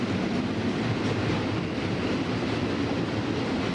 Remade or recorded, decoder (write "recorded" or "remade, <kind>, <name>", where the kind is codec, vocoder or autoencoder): recorded